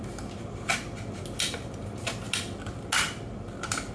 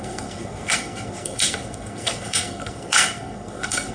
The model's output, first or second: second